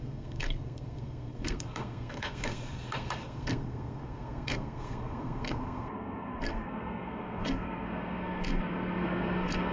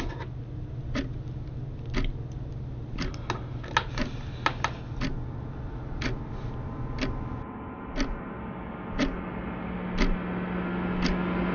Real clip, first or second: second